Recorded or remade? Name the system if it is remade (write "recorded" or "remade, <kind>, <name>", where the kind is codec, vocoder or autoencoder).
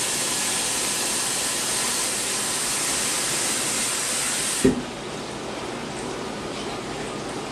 recorded